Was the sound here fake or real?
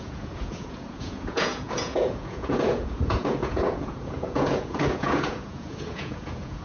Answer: fake